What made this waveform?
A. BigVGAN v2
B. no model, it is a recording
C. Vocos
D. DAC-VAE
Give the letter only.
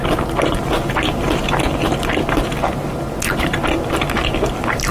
B